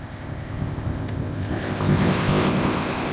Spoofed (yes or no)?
yes